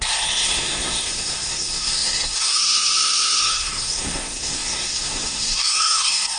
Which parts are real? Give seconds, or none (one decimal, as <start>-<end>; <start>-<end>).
none